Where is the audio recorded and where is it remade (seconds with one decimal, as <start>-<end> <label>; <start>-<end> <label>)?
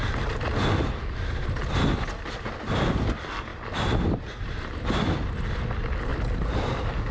0.0-7.1 recorded